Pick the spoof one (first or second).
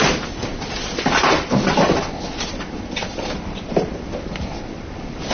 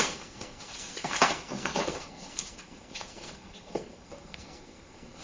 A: second